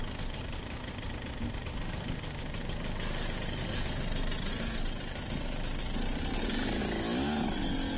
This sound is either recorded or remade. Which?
recorded